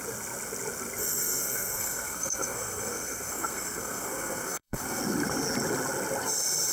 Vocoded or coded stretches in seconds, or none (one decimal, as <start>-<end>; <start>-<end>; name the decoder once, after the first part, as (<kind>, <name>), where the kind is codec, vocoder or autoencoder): 1.0-5.0 (codec, SNAC)